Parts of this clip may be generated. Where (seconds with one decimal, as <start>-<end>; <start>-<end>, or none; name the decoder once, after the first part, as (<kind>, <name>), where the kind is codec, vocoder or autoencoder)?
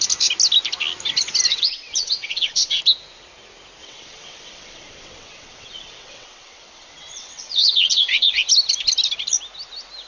1.5-2.8 (vocoder, WaveNeXt); 3.8-8.5